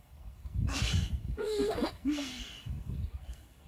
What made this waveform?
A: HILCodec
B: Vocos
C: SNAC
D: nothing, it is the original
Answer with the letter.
C